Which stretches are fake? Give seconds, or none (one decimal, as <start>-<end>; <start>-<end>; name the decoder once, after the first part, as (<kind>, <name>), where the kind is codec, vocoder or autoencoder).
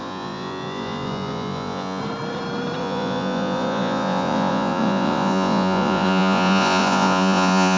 0.0-2.0 (vocoder, Vocos); 2.8-7.8